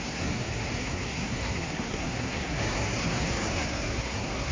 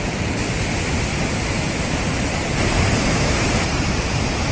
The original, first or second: second